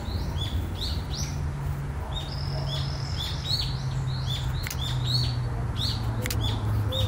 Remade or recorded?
recorded